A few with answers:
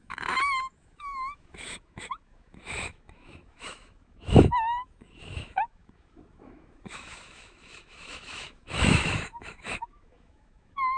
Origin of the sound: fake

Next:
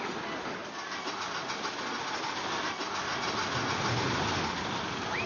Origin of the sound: real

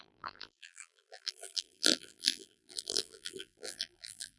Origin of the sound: fake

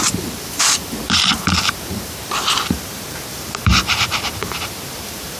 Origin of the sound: fake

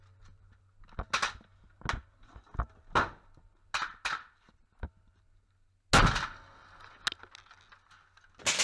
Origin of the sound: real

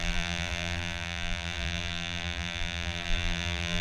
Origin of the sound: fake